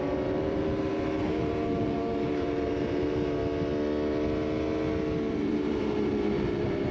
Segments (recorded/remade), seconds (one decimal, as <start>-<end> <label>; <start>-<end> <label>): 0.0-3.4 remade; 3.4-5.3 recorded; 5.3-6.9 remade

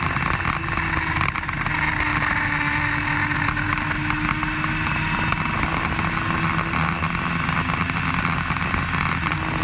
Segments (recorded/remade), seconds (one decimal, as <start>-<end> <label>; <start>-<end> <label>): 0.0-9.6 recorded

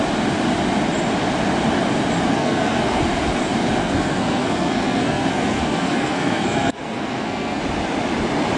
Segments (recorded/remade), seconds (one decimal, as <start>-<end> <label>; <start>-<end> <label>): 0.0-2.3 recorded; 2.3-3.0 remade; 3.0-3.8 recorded; 3.8-7.6 remade; 7.6-8.6 recorded

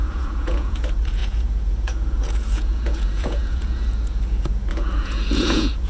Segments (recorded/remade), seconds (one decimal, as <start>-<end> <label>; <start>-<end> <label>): 0.0-5.9 remade

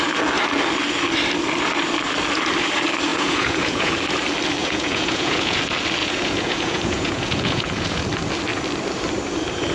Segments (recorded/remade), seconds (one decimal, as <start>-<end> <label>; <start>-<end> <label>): 0.0-3.1 recorded; 3.1-3.9 remade; 3.9-4.6 recorded; 4.6-5.6 remade; 5.6-6.0 recorded; 6.0-8.0 remade; 8.0-9.7 recorded